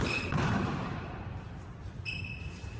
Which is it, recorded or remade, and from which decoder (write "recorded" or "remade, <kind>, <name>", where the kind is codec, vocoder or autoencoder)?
recorded